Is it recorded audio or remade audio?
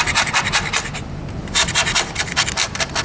recorded